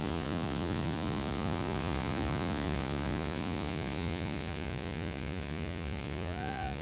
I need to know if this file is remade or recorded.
remade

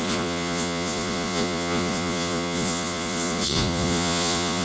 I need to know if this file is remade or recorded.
remade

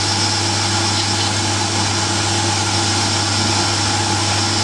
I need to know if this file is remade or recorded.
recorded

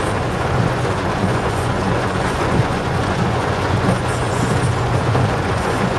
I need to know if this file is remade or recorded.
remade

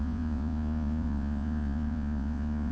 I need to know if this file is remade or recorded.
remade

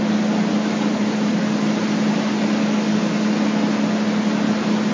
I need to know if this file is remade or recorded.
recorded